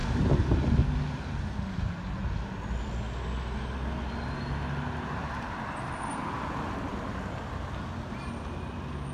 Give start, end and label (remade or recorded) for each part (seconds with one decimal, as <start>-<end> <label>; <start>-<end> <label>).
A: 0.0-9.1 recorded

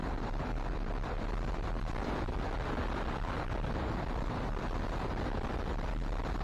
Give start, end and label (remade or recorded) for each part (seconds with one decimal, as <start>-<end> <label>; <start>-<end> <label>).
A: 0.0-6.4 recorded